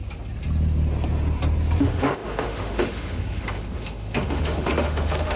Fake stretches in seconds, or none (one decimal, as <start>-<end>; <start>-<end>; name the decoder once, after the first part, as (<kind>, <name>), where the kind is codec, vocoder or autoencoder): 1.8-5.4 (autoencoder, DAC-VAE)